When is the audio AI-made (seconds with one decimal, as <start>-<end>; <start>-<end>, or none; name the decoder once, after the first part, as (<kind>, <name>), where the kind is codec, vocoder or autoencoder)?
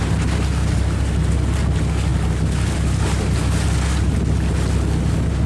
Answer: none